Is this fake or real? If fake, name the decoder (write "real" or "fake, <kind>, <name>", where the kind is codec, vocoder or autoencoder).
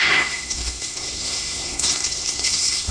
fake, codec, SNAC